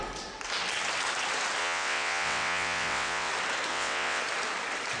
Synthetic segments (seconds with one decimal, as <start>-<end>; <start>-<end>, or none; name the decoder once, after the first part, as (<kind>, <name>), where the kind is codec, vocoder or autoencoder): 1.6-3.3 (vocoder, WaveNeXt); 3.7-4.2